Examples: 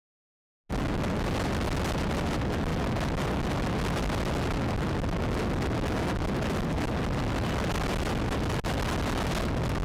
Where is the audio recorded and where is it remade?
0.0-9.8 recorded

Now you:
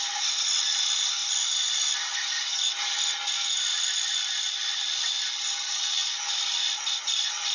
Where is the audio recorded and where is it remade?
0.0-7.5 recorded

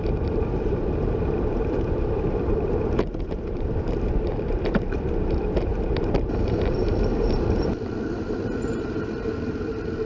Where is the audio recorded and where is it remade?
0.0-10.1 remade